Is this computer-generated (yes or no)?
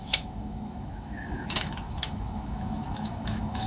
yes